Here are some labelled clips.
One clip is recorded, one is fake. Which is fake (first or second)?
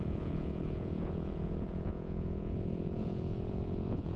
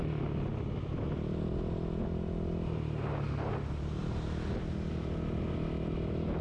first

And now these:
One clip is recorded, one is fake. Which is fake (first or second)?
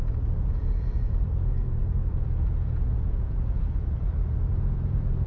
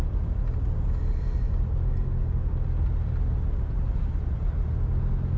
first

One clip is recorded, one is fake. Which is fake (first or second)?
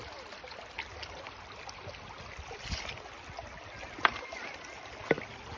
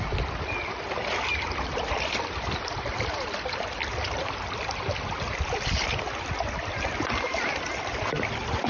second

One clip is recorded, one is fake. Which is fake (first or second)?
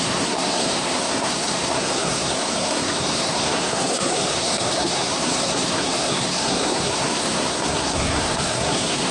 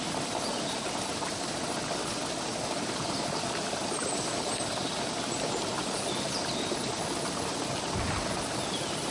first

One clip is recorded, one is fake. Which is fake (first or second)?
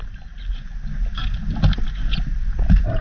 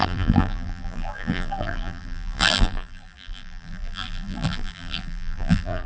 second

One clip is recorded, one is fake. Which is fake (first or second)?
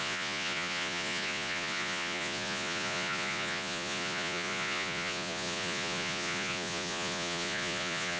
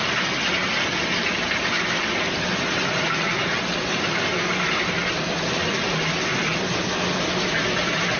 first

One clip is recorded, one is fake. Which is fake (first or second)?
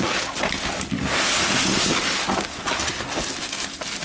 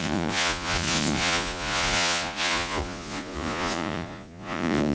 second